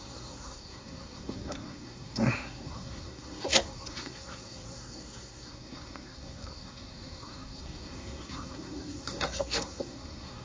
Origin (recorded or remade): remade